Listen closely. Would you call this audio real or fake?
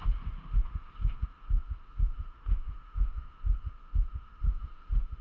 fake